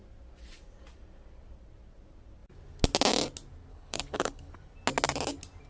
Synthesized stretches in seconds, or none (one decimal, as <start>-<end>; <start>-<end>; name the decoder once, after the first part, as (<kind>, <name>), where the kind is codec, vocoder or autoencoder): 3.7-4.5 (codec, HILCodec)